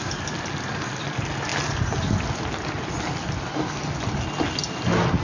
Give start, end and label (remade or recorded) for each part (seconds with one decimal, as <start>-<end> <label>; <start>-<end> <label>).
0.0-5.2 recorded